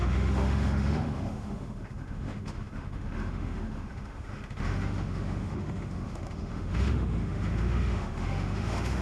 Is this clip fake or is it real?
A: fake